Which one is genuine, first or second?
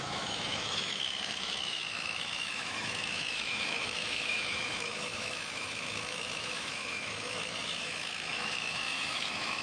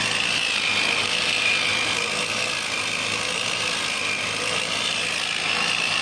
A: second